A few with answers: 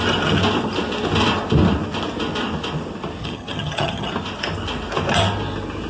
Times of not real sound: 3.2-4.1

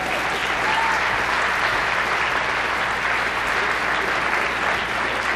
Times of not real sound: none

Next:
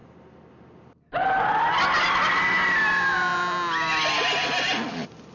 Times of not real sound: none

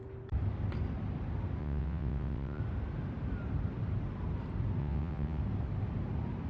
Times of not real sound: 1.6-2.6; 4.8-5.4

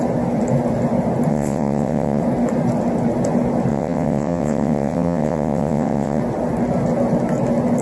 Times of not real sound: 1.3-2.2; 3.7-6.2